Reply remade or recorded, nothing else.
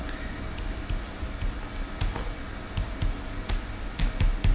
recorded